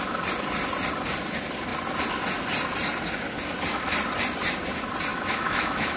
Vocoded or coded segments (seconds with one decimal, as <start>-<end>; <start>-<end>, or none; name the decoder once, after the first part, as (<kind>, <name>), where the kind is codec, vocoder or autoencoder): 5.1-6.0 (autoencoder, DAC-VAE)